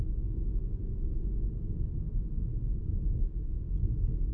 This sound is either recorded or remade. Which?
recorded